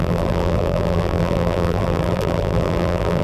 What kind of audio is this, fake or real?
fake